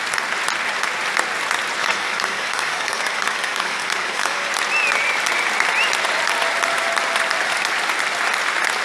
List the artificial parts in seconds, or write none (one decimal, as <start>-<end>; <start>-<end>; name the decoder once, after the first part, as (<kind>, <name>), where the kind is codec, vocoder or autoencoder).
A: 1.8-4.5 (codec, DAC)

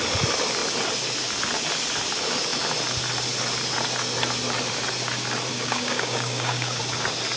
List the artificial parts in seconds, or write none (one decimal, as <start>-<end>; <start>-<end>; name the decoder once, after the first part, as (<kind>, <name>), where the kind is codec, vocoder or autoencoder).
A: 5.5-6.8 (codec, DAC)

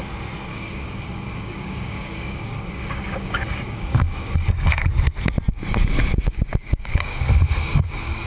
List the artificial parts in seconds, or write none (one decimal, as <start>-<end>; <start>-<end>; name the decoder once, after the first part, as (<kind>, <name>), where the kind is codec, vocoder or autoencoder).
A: 0.5-4.9 (codec, DAC); 5.5-8.3

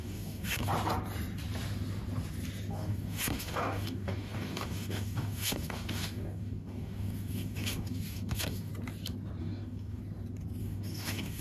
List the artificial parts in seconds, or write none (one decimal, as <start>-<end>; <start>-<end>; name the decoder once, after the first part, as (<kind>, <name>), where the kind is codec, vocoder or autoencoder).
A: 0.0-0.7 (codec, DAC); 2.7-8.7; 9.4-10.0; 10.6-11.4

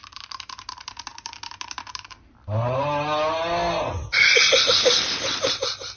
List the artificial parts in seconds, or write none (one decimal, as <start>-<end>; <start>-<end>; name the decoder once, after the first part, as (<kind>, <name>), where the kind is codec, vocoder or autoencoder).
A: none

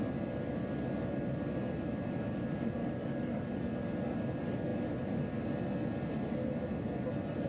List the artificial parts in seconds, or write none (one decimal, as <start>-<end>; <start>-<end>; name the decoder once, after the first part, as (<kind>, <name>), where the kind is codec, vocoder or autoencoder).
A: 2.8-3.4 (codec, DAC)

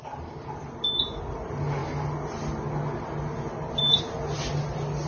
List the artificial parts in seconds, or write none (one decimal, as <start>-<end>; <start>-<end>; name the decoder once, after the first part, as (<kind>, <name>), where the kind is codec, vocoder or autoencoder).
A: none

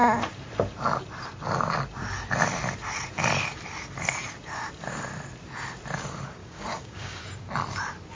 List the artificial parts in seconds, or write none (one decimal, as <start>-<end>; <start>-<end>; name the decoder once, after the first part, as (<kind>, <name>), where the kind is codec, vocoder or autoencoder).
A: 6.4-7.2 (codec, DAC)